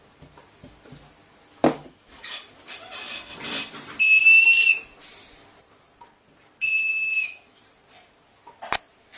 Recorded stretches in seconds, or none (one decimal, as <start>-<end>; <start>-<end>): 0.0-1.7; 2.4-6.8; 7.6-9.2

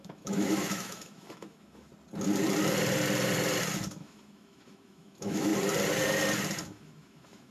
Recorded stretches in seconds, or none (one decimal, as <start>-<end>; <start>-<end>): 1.9-3.9; 5.5-6.6